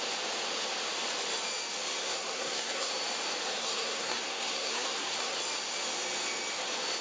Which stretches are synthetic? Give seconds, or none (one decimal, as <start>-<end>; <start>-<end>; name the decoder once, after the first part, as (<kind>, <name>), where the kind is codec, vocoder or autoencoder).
2.0-2.9 (codec, SNAC); 3.6-5.4